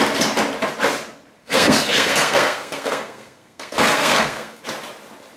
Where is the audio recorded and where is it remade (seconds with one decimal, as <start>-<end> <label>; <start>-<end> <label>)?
0.0-1.4 recorded; 1.4-4.6 remade; 4.6-5.4 recorded